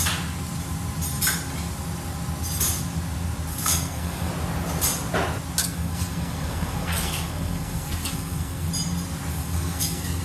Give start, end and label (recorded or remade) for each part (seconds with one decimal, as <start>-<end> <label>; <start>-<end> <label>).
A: 0.0-3.5 recorded; 3.5-4.3 remade; 4.3-5.6 recorded; 5.6-8.7 remade; 8.7-9.3 recorded; 9.3-10.2 remade